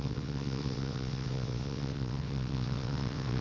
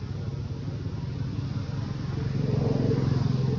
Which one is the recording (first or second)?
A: second